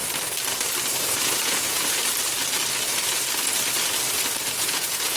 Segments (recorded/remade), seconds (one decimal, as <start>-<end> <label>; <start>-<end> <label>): 0.0-1.2 recorded; 1.2-2.0 remade; 2.0-4.6 recorded; 4.6-5.2 remade